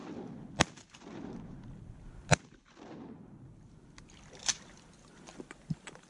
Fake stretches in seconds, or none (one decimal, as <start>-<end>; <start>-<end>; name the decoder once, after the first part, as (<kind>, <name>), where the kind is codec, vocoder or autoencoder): none

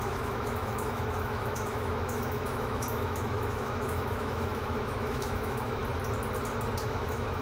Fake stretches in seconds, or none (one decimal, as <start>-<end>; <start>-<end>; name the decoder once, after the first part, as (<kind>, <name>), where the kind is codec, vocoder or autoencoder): 0.0-5.8 (autoencoder, DAC-VAE); 6.8-7.4